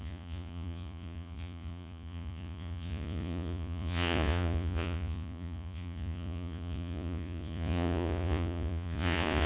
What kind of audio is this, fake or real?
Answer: fake